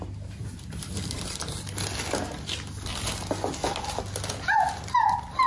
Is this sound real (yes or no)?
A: yes